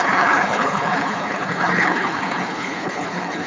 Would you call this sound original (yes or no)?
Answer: no